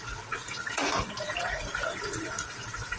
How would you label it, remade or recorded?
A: remade